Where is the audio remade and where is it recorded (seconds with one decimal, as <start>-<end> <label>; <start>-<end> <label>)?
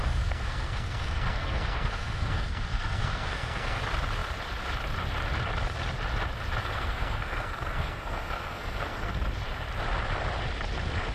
0.0-3.8 remade; 3.8-6.6 recorded; 6.6-9.2 remade; 9.2-11.1 recorded